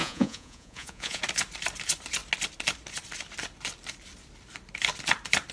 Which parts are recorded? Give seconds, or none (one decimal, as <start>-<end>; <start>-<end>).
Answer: 1.2-5.5